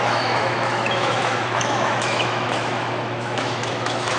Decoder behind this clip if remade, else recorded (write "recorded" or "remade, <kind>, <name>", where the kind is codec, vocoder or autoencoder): remade, autoencoder, DAC-VAE